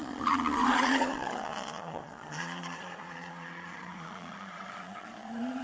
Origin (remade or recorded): remade